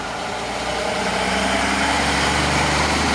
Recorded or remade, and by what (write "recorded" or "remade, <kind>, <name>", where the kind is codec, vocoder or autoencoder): remade, vocoder, BigVGAN v2